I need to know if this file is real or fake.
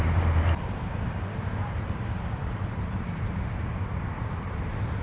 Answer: fake